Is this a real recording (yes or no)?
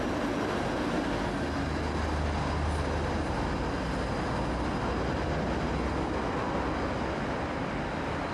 yes